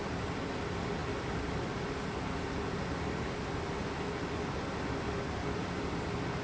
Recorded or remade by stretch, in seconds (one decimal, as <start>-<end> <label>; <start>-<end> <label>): 0.0-6.4 recorded